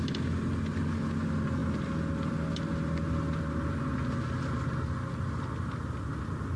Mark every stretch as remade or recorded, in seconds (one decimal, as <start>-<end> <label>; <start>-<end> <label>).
0.0-6.6 recorded